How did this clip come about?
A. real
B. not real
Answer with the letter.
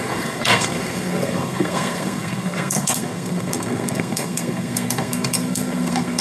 B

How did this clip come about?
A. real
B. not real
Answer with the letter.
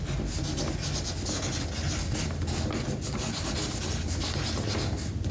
A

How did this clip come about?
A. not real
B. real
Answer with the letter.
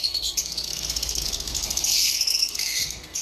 A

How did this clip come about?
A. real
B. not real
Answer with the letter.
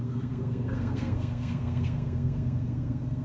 B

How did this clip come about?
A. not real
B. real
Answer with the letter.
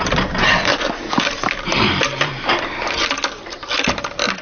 B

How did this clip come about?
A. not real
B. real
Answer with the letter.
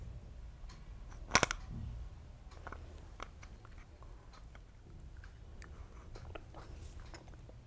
B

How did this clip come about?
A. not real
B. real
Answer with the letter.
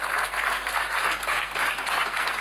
A